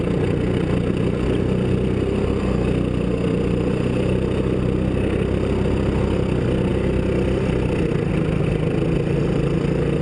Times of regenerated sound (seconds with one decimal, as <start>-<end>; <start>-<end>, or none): none